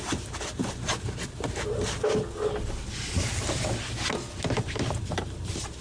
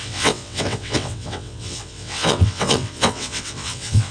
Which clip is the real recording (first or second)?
first